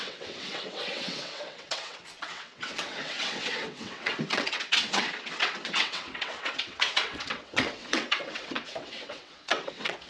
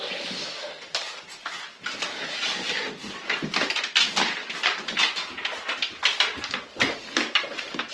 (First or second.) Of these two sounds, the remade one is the first